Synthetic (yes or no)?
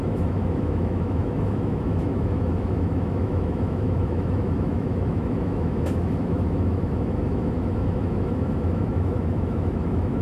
yes